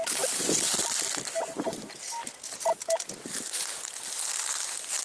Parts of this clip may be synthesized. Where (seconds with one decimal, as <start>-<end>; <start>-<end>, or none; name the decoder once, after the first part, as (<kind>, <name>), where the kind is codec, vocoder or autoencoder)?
none